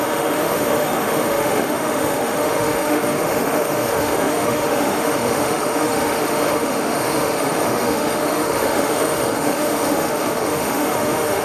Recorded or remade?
remade